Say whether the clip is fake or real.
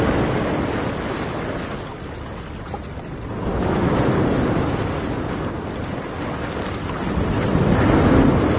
real